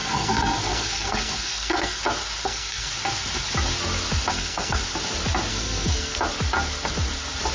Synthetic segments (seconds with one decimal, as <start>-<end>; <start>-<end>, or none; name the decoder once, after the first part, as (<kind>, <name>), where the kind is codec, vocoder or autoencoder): 0.0-2.0 (codec, SNAC); 2.4-2.9; 4.3-4.8; 5.5-6.2